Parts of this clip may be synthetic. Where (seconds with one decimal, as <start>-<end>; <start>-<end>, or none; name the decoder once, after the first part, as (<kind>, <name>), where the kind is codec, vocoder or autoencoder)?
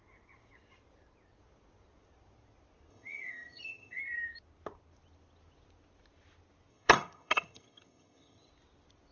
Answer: 2.9-4.0 (vocoder, HiFi-GAN); 6.7-8.5